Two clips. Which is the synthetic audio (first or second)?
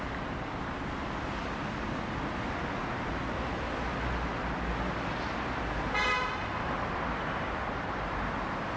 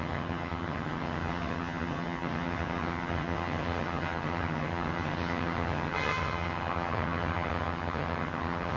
second